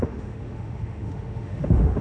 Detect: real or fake fake